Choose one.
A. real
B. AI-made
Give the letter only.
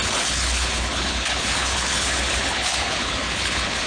B